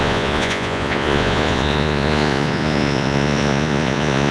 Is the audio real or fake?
fake